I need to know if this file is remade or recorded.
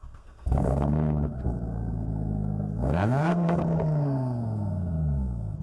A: remade